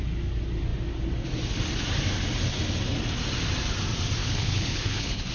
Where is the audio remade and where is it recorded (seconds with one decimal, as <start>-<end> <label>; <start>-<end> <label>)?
0.0-4.2 recorded; 4.2-5.3 remade